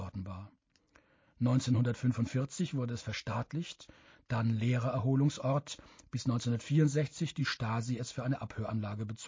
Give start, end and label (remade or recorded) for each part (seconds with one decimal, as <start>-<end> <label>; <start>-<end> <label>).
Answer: 0.0-9.3 recorded